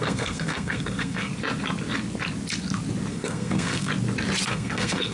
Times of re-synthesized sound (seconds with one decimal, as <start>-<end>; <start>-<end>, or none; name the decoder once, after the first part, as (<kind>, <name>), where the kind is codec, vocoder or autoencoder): 0.0-1.3 (codec, SNAC); 3.1-3.9; 4.5-5.1